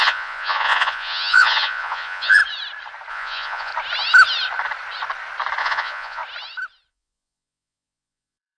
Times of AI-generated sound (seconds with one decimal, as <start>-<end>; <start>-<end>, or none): 0.0-2.4; 3.1-3.7; 5.6-6.2; 6.9-8.6